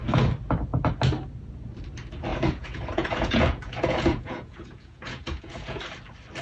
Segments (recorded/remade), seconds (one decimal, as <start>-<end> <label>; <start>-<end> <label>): 0.0-2.3 recorded; 2.3-5.8 remade; 5.8-6.4 recorded